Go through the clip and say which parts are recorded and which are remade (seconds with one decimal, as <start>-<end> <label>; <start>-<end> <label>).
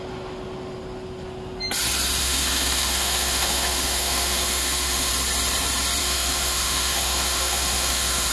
0.0-2.2 recorded; 2.2-5.1 remade; 5.1-6.0 recorded; 6.0-8.3 remade